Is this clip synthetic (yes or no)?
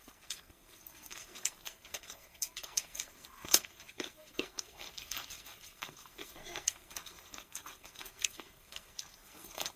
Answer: yes